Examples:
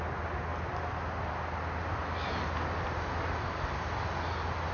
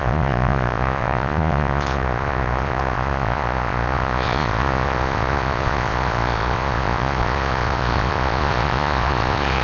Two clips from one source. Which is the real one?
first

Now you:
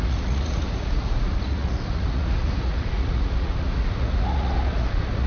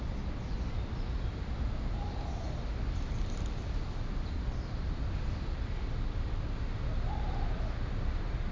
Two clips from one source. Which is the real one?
second